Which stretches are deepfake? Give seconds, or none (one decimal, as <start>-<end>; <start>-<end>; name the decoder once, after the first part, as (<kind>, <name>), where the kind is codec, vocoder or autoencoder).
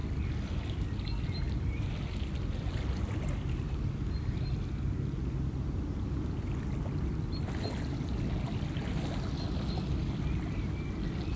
none